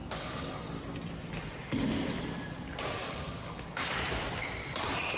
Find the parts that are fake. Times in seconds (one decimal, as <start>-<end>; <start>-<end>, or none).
0.0-0.8; 3.0-3.9